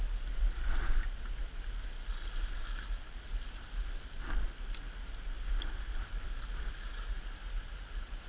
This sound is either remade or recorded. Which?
recorded